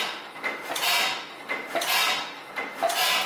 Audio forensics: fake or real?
real